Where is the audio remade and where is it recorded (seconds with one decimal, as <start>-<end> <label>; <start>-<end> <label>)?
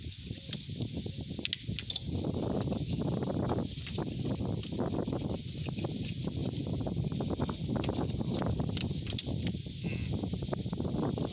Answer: 0.0-11.3 recorded